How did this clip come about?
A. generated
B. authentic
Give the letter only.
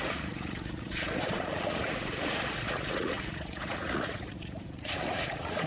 A